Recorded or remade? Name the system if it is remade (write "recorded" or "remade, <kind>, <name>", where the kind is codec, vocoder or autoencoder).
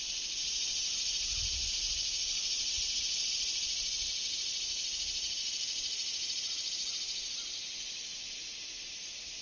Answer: recorded